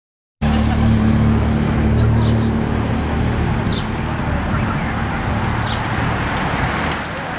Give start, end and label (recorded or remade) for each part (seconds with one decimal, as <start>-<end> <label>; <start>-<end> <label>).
0.0-7.4 recorded